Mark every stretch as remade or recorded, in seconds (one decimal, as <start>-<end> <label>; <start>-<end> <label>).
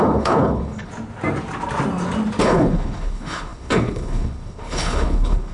0.0-0.9 remade; 0.9-2.4 recorded; 2.4-5.5 remade